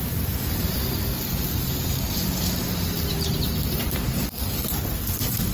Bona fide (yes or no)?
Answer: yes